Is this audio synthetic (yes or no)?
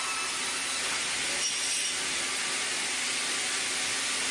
no